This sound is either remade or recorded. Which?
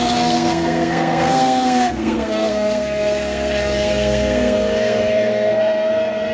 remade